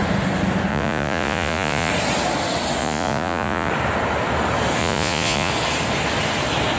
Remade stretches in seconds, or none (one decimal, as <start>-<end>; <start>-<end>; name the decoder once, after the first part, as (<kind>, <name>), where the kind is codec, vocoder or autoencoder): 0.7-1.9 (vocoder, Vocos); 2.8-3.7; 4.8-5.5